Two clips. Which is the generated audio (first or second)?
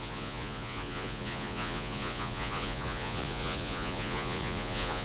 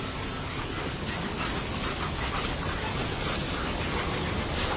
first